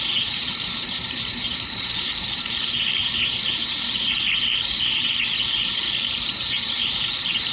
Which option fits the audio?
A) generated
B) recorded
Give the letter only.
A